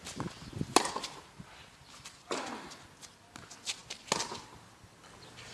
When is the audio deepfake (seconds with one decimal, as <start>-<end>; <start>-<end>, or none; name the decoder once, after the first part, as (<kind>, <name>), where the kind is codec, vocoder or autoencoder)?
none